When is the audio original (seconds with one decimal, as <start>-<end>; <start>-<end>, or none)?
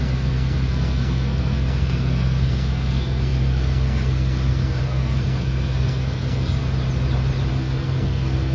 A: 6.6-7.5